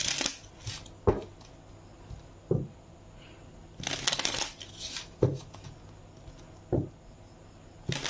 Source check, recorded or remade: recorded